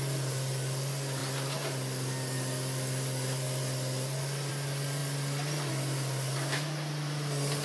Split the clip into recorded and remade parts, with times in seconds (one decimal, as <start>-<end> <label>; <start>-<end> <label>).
0.0-7.6 recorded